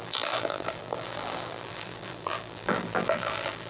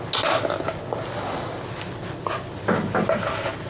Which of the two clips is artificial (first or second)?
first